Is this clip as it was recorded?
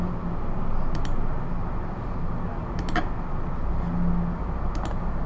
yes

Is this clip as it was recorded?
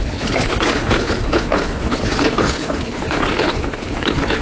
no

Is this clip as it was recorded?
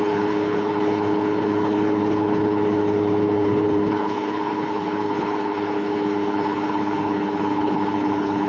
no